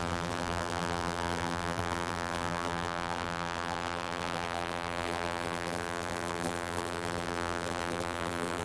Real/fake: fake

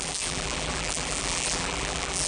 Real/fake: fake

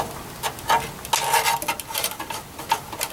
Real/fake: real